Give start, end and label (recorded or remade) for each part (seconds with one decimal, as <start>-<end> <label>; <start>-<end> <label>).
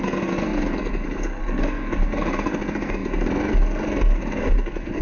0.0-5.0 remade